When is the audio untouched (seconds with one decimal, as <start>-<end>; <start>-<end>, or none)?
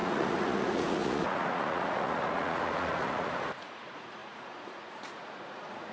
none